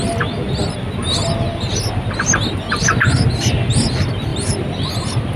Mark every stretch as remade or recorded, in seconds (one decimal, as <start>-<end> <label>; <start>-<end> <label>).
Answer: 0.0-5.4 recorded